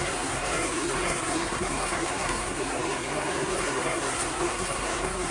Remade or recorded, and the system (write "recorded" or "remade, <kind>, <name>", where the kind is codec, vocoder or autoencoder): remade, codec, SNAC